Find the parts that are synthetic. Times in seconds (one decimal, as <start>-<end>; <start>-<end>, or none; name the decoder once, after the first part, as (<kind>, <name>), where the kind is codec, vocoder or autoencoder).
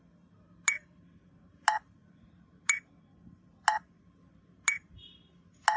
none